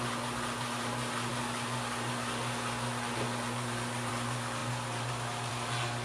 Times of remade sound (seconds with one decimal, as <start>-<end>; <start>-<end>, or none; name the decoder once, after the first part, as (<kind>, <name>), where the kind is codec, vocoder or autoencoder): none